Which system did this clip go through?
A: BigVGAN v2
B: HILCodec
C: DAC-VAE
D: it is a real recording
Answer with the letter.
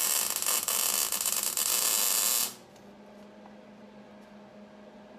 D